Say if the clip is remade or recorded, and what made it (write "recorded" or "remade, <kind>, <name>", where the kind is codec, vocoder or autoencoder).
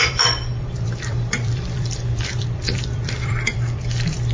remade, vocoder, BigVGAN v2